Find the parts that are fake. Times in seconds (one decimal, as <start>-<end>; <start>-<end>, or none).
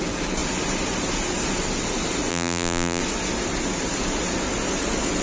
2.3-3.0